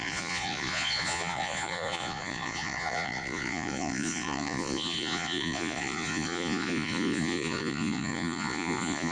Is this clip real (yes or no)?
no